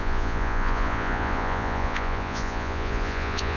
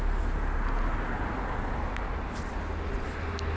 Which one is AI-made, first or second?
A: first